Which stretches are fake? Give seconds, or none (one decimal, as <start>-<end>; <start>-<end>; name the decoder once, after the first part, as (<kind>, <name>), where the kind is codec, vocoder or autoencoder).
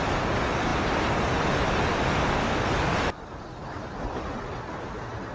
none